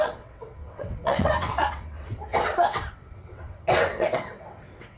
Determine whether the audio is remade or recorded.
remade